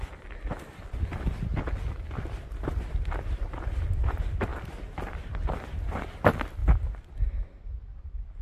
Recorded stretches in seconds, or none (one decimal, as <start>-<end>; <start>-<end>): 6.6-8.0